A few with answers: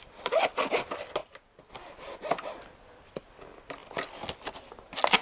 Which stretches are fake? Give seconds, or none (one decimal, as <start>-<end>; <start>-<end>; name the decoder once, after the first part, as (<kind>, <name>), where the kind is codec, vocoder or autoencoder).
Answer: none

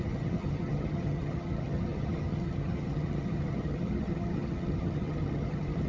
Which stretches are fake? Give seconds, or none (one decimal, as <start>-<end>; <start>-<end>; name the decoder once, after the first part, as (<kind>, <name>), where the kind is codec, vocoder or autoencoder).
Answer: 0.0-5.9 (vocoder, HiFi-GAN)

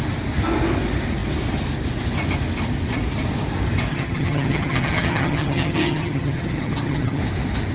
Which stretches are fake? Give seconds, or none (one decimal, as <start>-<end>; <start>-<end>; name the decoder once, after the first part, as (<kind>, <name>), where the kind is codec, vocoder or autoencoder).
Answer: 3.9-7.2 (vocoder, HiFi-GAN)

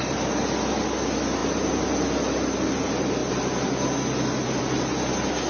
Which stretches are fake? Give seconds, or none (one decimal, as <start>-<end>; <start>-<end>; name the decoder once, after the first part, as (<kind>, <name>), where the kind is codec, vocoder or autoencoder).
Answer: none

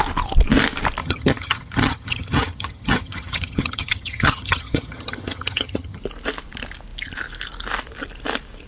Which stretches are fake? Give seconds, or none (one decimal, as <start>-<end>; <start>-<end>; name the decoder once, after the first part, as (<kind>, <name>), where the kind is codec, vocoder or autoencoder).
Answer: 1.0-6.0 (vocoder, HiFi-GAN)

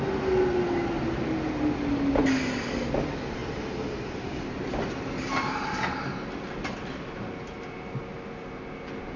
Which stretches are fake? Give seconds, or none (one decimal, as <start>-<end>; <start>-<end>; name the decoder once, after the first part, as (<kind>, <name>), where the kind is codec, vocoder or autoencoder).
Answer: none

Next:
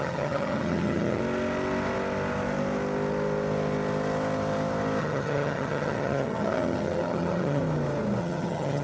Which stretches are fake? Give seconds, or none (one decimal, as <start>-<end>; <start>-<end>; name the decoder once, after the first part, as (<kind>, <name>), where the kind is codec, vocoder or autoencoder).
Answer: 0.0-1.2 (vocoder, HiFi-GAN); 5.0-7.6; 8.2-8.8

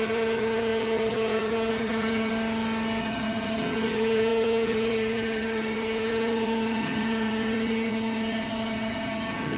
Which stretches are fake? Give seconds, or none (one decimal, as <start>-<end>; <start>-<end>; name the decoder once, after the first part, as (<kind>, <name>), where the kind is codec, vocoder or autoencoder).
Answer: 0.0-2.3 (vocoder, HiFi-GAN); 3.0-9.6